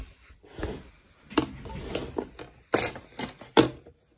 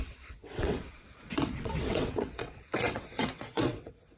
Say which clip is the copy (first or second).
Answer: second